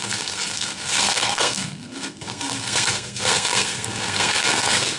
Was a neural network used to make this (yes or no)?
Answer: yes